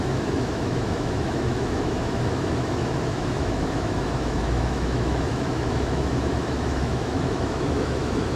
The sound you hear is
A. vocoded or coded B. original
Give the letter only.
A